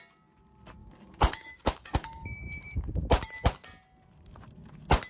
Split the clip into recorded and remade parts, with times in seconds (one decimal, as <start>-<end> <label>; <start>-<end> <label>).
0.0-0.8 recorded; 0.8-3.0 remade; 3.0-5.1 recorded